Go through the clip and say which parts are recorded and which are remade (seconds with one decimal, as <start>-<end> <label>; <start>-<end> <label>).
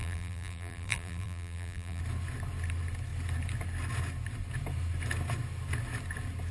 0.0-2.0 remade; 2.0-6.5 recorded